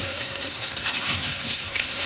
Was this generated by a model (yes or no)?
yes